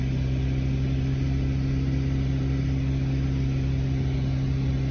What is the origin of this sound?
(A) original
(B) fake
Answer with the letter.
A